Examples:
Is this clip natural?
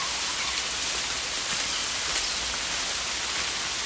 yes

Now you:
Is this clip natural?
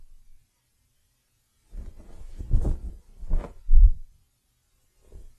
yes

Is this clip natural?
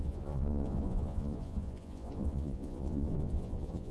no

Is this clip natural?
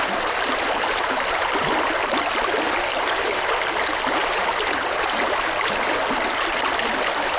yes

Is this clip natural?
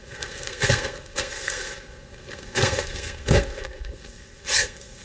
no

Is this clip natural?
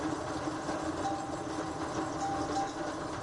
yes